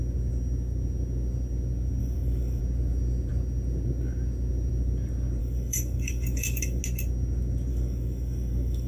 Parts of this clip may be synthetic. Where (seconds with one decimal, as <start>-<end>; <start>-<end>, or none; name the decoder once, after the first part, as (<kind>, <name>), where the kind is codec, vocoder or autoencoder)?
2.0-2.6 (codec, DAC); 5.4-6.8; 7.7-8.9